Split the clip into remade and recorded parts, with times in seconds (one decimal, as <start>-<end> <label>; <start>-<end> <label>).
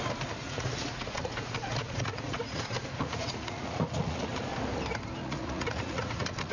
0.0-0.4 recorded; 0.4-4.3 remade; 4.3-5.2 recorded; 5.2-6.5 remade